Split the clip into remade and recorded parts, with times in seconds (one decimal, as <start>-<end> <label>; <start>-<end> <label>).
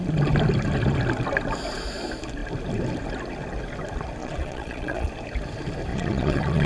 0.0-4.2 recorded; 4.2-5.1 remade; 5.1-5.9 recorded; 5.9-6.7 remade